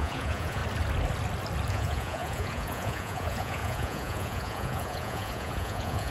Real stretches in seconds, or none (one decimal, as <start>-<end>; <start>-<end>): 0.6-1.7